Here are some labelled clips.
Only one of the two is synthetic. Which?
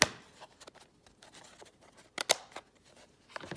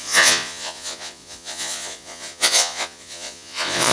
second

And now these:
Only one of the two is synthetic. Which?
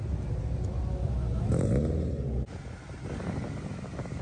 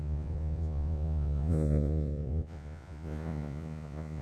second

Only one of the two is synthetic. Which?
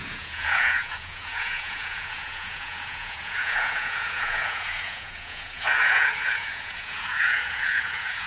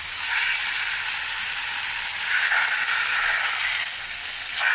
first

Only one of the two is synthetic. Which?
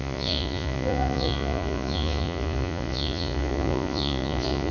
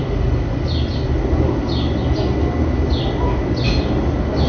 first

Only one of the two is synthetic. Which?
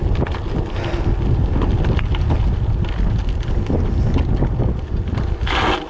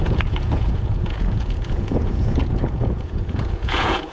second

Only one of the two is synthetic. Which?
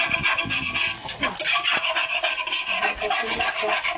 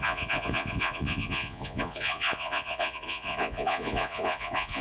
second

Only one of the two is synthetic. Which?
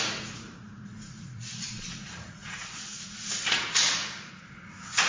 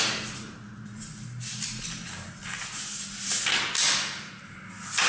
first